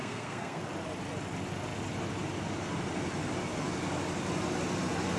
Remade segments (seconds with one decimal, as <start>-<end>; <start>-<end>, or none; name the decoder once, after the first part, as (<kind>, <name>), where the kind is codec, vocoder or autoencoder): 0.0-0.6 (codec, SNAC)